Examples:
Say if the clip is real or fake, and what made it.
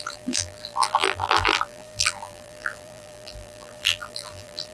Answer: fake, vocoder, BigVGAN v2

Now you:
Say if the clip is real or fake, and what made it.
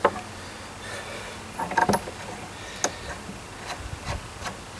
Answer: real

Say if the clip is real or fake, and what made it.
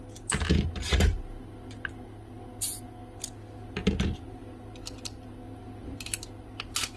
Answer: real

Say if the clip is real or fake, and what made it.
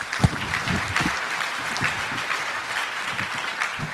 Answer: fake, vocoder, BigVGAN v2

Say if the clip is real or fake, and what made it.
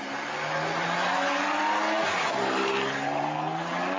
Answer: real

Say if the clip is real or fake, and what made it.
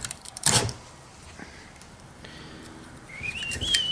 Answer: fake, vocoder, BigVGAN v2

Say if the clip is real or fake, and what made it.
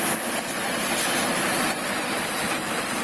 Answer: fake, vocoder, BigVGAN v2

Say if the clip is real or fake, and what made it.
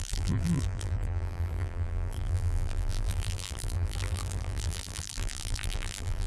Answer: fake, vocoder, BigVGAN v2